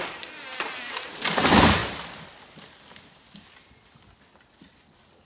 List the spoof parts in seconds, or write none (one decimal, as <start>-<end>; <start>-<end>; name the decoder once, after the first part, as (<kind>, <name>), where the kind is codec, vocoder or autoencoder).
none